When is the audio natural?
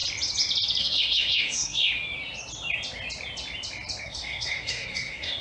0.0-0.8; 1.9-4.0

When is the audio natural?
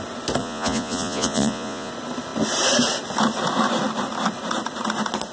0.0-0.4; 1.9-5.3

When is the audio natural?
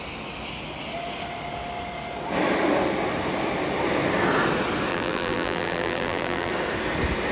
0.0-4.9; 6.5-7.3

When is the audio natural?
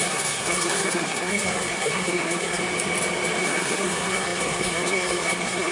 2.6-3.4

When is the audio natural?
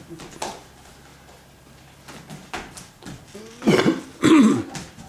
0.0-5.1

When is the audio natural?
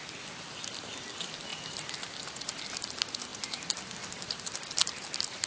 0.0-5.5